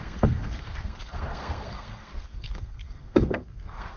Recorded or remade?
remade